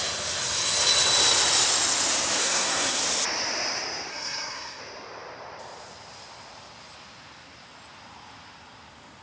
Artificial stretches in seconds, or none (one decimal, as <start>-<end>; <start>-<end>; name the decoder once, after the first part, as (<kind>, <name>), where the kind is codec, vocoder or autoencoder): 2.4-3.0 (codec, SNAC); 4.1-4.8